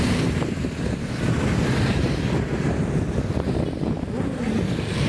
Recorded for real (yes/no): no